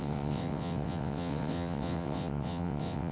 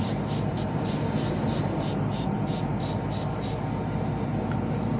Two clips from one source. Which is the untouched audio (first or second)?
second